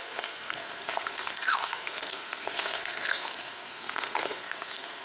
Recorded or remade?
remade